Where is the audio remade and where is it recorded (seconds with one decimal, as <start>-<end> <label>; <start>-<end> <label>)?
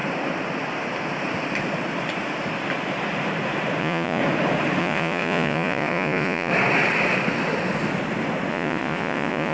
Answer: 0.0-3.8 recorded; 3.8-4.2 remade; 4.2-4.8 recorded; 4.8-6.5 remade; 6.5-8.5 recorded; 8.5-9.5 remade